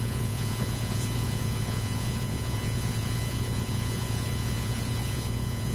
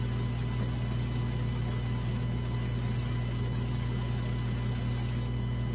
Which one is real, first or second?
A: second